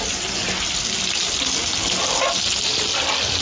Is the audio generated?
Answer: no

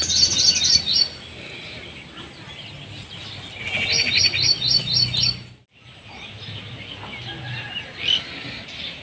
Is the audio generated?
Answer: no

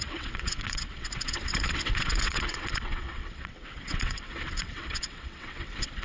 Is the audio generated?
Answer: yes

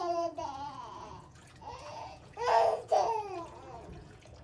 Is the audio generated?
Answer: yes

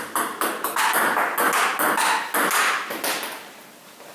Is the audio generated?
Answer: no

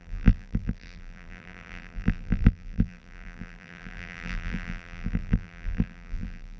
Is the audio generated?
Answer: yes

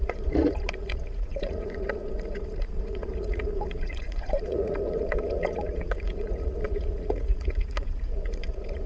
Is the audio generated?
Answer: yes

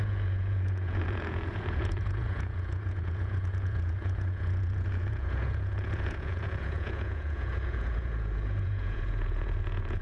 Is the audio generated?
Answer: yes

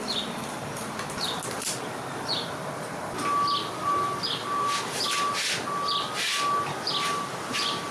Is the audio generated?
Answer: no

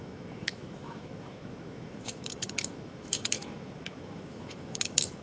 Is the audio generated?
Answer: yes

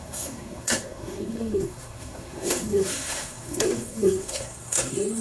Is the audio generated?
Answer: yes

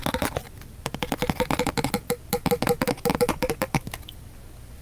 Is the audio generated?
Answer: no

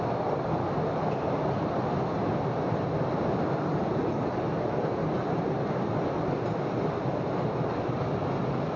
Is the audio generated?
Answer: no